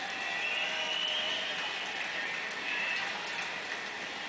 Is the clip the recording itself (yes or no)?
yes